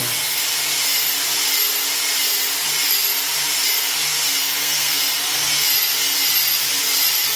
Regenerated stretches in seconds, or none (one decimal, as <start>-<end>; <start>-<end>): 4.4-5.0